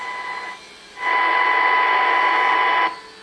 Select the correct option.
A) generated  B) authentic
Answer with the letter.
B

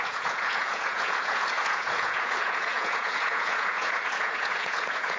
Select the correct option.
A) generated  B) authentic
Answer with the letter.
A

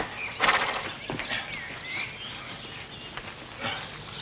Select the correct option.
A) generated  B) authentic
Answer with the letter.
B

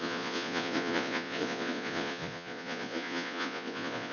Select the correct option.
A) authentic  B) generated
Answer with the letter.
B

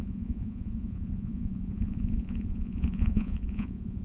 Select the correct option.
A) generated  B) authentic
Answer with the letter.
A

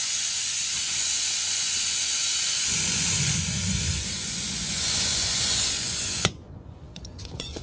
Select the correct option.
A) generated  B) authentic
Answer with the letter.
A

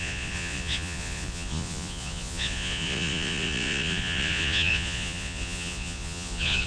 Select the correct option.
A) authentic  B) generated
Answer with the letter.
B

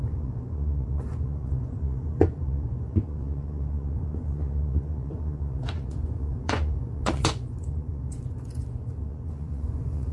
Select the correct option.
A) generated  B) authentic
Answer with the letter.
A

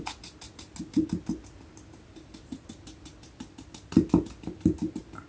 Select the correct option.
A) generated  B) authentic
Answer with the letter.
B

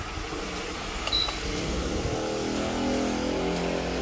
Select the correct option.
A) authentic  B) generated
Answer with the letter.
A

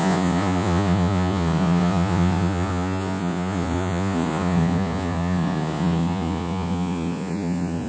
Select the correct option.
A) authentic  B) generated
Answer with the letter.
B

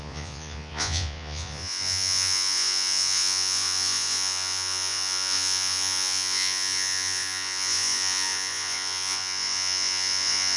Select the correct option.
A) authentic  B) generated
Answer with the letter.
B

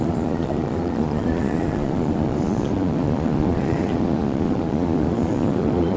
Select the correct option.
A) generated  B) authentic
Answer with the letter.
A